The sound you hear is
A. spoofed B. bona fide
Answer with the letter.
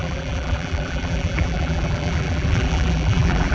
A